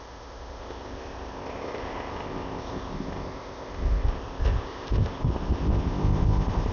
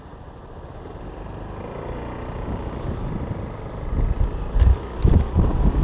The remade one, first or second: first